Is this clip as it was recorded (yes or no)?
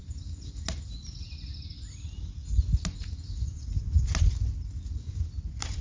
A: yes